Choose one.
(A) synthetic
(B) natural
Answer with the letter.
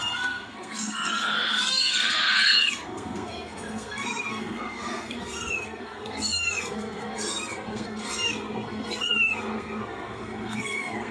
A